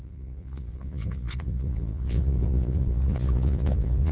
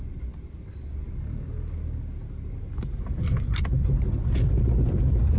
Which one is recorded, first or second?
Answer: second